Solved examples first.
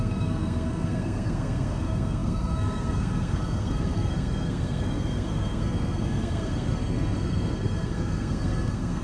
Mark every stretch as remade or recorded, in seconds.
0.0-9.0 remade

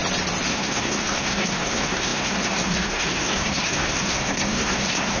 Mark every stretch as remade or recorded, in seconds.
0.0-0.5 recorded; 0.5-5.2 remade